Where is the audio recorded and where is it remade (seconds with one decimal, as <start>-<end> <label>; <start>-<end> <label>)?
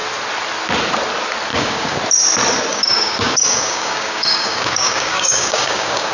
0.0-1.5 recorded; 1.5-2.0 remade; 2.0-2.7 recorded; 2.7-6.1 remade